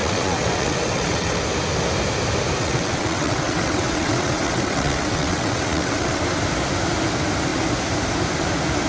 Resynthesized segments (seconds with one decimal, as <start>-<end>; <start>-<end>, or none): 0.0-1.4; 2.6-6.2